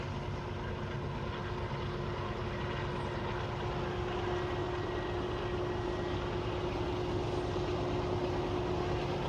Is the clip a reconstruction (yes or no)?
no